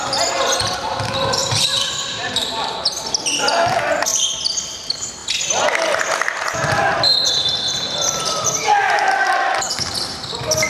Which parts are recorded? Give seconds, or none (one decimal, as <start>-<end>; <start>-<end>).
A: 0.0-1.4; 3.1-10.7